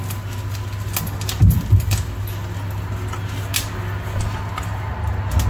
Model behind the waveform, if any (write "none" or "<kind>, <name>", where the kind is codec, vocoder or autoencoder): none